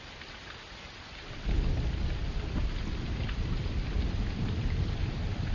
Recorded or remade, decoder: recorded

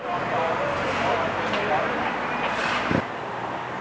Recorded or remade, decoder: recorded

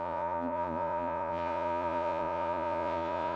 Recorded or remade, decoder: remade, vocoder, Vocos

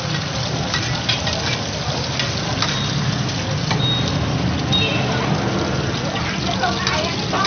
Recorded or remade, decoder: recorded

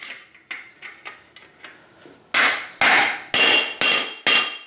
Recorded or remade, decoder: recorded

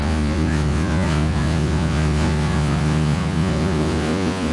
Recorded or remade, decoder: remade, vocoder, Vocos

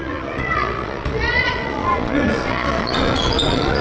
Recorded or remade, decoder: remade, vocoder, Vocos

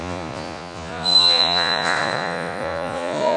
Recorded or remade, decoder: remade, vocoder, Vocos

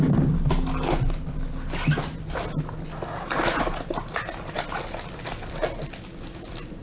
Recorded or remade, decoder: recorded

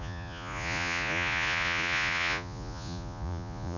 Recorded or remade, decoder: remade, vocoder, Vocos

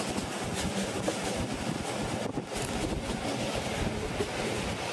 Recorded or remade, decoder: recorded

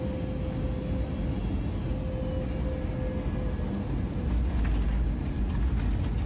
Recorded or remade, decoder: recorded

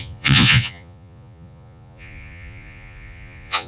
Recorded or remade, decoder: remade, vocoder, Vocos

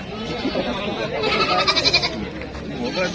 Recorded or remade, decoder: recorded